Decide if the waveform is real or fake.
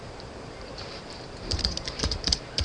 fake